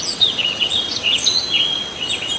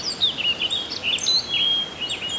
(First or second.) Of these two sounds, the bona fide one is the second